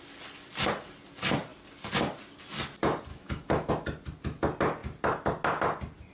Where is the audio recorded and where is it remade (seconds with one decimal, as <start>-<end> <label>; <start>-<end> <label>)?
0.0-3.1 recorded; 3.1-3.7 remade; 3.7-6.1 recorded